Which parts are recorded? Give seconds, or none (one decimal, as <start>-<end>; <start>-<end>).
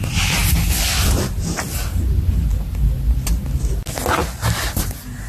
0.0-5.3